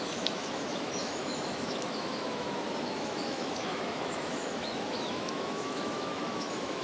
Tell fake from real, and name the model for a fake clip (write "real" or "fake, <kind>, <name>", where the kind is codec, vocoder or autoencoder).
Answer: fake, autoencoder, DAC-VAE